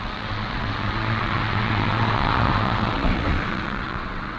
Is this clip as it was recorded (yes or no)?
no